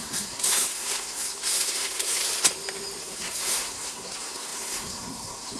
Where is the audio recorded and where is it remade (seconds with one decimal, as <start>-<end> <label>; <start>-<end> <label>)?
0.0-2.2 remade; 2.2-3.0 recorded; 3.0-5.6 remade